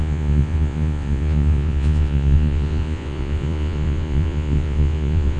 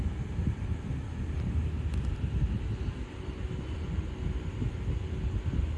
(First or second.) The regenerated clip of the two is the first